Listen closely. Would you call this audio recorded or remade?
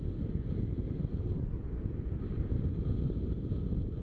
recorded